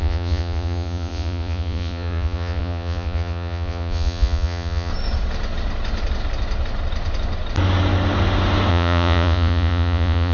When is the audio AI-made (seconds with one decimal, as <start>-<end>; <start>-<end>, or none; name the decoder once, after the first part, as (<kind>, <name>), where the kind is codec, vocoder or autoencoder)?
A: 0.0-4.9 (vocoder, Vocos); 8.7-10.3